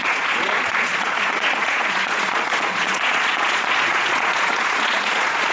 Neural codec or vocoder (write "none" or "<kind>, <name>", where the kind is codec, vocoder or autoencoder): vocoder, Vocos